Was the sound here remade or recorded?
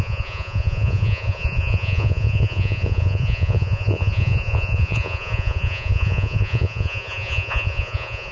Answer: remade